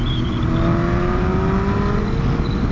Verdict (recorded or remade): recorded